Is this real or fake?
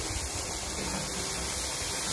real